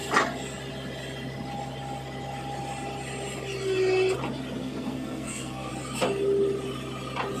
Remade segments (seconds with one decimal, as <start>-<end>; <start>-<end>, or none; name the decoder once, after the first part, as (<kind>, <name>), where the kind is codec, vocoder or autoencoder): 4.6-5.7 (codec, SNAC)